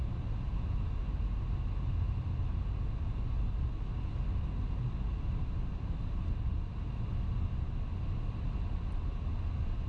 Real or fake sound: real